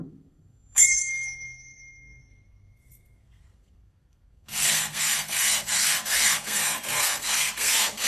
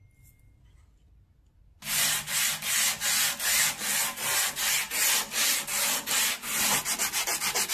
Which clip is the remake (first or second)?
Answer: first